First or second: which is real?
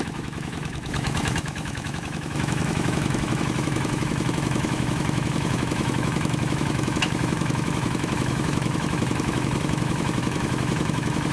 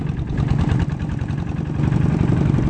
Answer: second